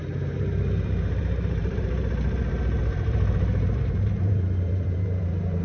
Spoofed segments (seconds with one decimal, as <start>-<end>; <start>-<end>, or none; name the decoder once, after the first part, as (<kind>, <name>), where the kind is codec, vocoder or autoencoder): 0.0-5.6 (vocoder, BigVGAN v2)